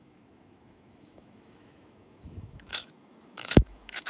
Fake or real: fake